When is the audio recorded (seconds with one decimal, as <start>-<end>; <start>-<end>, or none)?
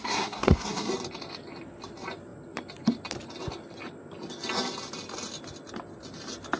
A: 0.9-6.6